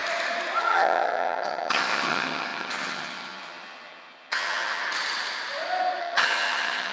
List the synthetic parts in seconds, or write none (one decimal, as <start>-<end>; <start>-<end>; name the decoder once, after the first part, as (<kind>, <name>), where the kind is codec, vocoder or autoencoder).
0.6-4.8 (vocoder, HiFi-GAN); 6.0-6.9